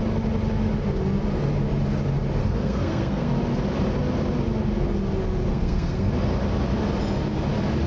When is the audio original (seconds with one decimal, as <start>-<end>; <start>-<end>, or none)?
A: 0.0-2.4; 3.3-5.5; 6.1-7.9